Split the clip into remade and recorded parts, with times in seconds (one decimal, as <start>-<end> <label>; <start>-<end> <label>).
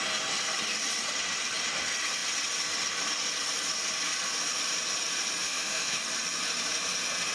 0.0-5.4 recorded; 5.4-6.0 remade; 6.0-7.3 recorded